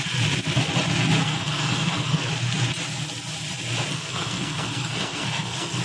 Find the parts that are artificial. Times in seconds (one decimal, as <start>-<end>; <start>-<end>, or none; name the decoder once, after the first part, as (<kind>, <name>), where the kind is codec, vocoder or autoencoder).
1.2-2.3 (codec, SNAC); 3.9-5.8